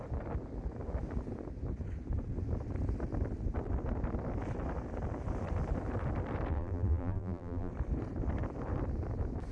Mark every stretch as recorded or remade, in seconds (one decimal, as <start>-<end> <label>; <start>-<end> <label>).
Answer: 0.0-6.5 recorded; 6.5-7.7 remade; 7.7-9.5 recorded